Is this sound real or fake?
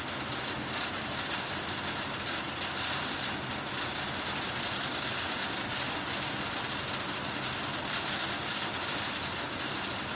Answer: real